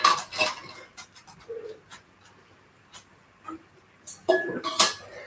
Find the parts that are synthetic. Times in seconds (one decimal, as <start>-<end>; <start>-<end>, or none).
none